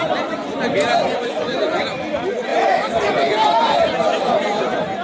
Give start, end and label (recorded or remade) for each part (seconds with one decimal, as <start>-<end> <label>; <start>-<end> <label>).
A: 0.0-2.5 recorded; 2.5-3.1 remade; 3.1-5.0 recorded